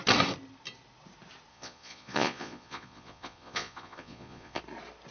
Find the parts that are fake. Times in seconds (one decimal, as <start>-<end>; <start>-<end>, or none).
1.5-4.6